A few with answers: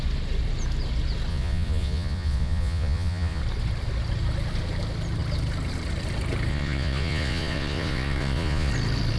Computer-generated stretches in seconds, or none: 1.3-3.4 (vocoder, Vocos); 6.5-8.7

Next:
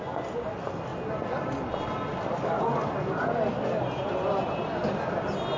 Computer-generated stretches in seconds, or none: none

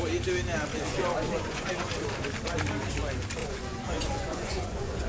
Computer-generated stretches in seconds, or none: 0.7-1.9 (vocoder, Vocos); 3.4-5.1

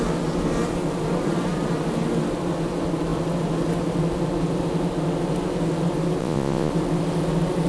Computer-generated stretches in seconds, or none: 6.2-6.7 (vocoder, Vocos)

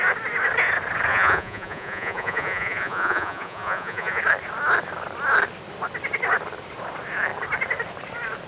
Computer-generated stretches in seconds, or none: 1.1-4.2 (vocoder, Vocos)

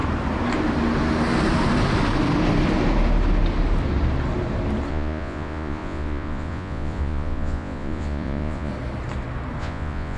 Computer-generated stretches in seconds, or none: 4.9-8.7 (vocoder, Vocos); 9.6-10.2